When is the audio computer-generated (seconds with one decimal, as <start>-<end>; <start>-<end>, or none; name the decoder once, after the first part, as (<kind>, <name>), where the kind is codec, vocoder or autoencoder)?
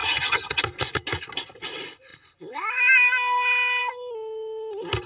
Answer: 0.0-0.6 (vocoder, HiFi-GAN)